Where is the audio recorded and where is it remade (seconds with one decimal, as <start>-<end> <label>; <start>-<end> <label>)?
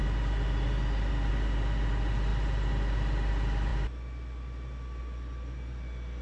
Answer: 0.0-6.2 recorded